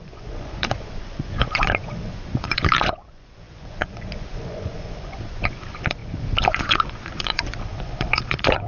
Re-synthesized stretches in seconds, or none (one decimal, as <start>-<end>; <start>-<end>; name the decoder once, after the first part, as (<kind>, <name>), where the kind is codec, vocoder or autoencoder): 0.0-8.7 (vocoder, Vocos)